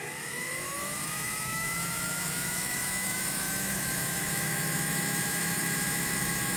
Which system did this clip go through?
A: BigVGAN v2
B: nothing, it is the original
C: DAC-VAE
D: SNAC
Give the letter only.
C